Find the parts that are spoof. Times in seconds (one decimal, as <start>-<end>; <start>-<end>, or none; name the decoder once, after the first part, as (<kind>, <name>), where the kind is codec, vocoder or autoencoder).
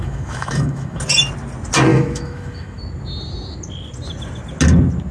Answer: 0.0-1.0 (autoencoder, DAC-VAE); 1.9-2.8